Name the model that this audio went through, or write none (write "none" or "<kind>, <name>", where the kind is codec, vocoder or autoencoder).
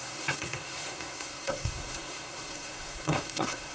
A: codec, SNAC